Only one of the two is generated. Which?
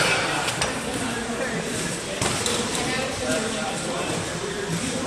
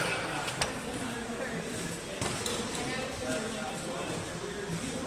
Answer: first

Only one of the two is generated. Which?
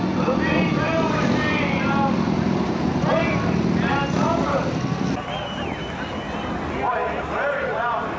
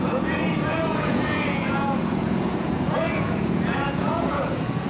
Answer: second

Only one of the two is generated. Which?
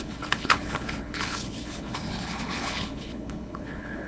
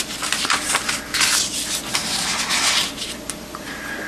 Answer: first